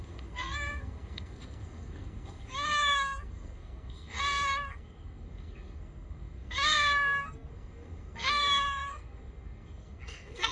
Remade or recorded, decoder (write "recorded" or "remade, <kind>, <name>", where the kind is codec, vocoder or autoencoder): remade, codec, SNAC